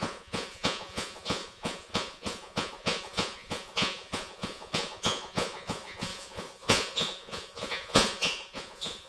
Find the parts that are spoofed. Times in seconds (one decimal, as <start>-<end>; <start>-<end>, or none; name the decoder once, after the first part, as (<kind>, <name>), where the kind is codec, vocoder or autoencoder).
0.0-9.1 (vocoder, Vocos)